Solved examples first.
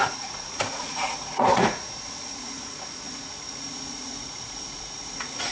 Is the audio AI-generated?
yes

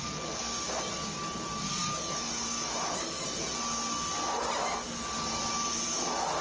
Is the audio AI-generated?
no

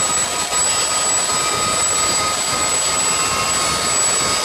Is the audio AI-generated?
no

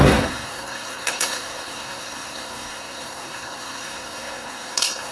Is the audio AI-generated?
yes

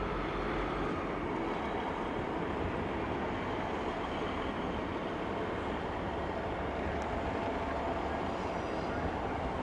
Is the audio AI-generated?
no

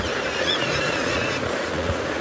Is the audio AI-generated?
yes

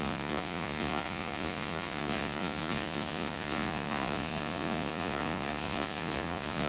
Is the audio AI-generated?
yes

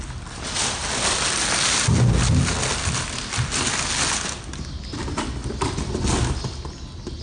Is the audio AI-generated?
no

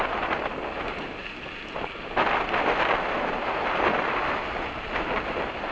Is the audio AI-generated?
no